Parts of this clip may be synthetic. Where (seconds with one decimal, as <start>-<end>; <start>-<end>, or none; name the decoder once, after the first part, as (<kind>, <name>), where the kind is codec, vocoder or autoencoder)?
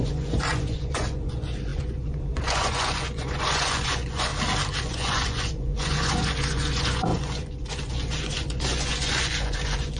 0.0-4.3 (vocoder, Vocos); 4.8-10.0